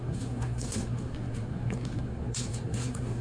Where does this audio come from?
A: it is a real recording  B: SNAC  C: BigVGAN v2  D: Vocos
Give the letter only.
B